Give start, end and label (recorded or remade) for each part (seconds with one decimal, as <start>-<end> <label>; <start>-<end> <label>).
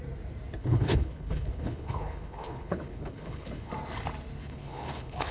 0.0-0.5 recorded; 0.5-3.7 remade; 3.7-4.4 recorded; 4.4-5.3 remade